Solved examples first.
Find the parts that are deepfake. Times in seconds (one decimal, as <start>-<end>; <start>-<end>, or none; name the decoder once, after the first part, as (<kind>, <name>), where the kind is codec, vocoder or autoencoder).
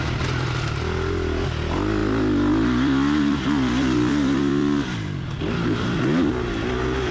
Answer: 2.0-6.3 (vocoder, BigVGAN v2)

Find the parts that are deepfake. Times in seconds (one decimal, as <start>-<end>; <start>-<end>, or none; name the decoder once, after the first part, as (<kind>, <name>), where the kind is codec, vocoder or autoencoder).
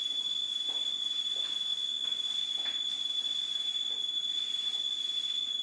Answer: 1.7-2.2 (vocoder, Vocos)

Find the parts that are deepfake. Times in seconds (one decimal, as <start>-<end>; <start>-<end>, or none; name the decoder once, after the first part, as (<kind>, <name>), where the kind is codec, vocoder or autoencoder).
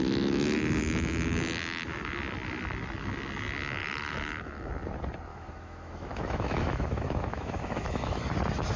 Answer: 3.8-4.7 (autoencoder, DAC-VAE); 5.3-8.2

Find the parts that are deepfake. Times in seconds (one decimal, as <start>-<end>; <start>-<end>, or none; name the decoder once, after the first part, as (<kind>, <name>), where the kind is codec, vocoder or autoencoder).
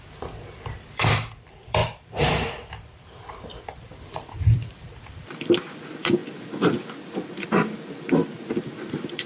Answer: 0.0-6.2 (vocoder, BigVGAN v2); 8.9-9.3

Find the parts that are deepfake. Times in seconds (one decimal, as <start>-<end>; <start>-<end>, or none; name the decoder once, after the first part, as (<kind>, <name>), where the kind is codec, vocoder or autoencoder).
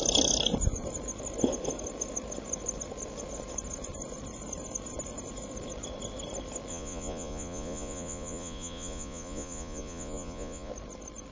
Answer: 6.7-10.7 (vocoder, Vocos)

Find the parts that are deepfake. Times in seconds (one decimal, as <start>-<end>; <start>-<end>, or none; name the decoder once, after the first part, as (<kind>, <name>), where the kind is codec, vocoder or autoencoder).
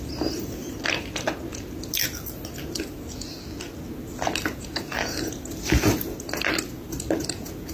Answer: none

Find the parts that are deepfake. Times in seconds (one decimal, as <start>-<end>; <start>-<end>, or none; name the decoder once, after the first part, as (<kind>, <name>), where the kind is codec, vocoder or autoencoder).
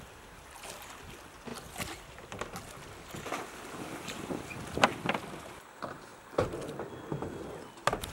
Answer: none